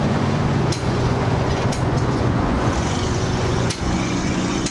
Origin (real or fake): fake